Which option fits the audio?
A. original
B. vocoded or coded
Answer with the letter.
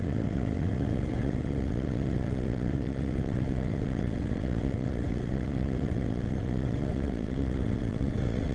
B